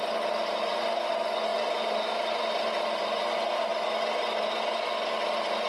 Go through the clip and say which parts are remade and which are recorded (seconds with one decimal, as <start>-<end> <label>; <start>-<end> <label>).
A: 0.0-5.7 recorded